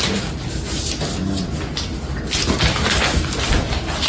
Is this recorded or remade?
recorded